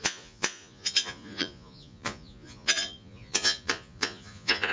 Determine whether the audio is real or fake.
fake